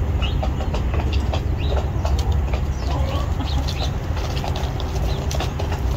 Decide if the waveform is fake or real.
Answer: real